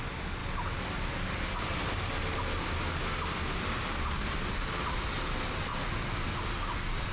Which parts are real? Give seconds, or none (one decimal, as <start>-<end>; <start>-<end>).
0.0-7.1